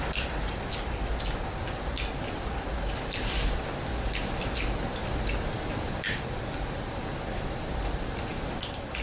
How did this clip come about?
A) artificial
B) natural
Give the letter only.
B